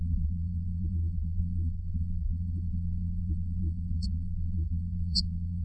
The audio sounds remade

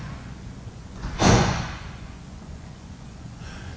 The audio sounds remade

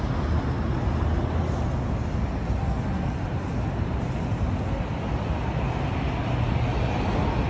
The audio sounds recorded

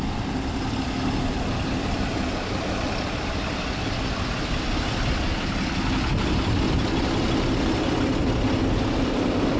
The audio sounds recorded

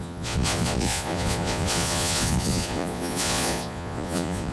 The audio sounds remade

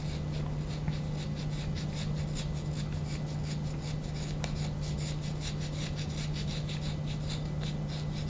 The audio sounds recorded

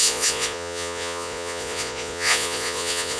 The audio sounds remade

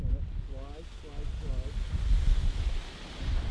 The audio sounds recorded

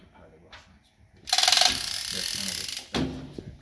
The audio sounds recorded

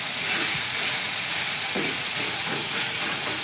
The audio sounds remade